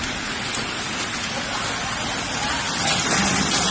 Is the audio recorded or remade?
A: recorded